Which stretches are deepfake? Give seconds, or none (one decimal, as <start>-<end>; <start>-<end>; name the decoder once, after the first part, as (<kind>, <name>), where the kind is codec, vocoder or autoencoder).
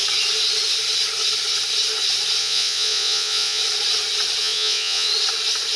2.4-3.6 (vocoder, Vocos); 4.4-5.1